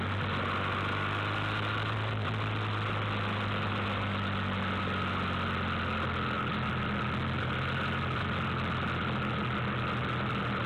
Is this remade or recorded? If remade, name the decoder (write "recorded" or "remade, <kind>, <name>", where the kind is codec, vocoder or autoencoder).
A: recorded